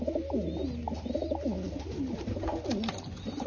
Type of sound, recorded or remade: recorded